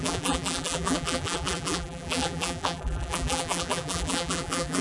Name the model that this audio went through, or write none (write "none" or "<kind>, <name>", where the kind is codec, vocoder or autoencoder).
vocoder, BigVGAN v2